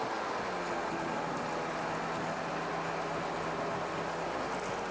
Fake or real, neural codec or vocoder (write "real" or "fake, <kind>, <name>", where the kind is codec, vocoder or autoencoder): real